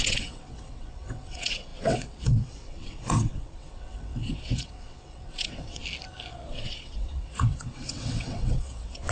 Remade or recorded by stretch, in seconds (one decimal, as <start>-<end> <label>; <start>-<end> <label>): 0.0-5.8 remade; 5.8-6.5 recorded; 6.5-9.1 remade